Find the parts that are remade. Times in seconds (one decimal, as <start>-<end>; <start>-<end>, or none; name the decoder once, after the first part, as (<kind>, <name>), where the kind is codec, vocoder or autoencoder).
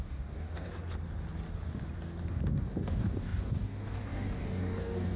0.0-0.7 (codec, DAC); 2.3-5.2